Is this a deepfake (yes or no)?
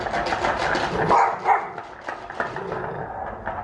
no